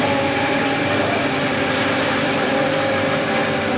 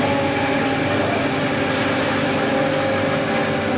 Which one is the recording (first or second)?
second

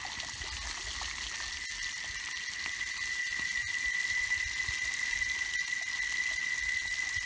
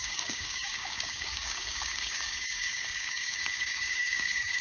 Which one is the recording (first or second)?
first